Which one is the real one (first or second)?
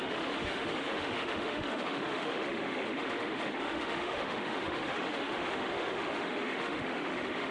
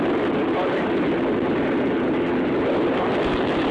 second